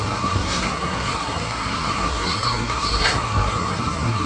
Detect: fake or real fake